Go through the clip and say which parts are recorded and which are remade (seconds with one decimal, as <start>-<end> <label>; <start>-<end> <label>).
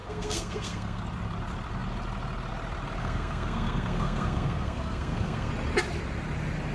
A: 0.0-1.0 remade; 1.0-3.0 recorded; 3.0-5.5 remade; 5.5-6.7 recorded